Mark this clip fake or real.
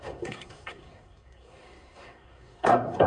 fake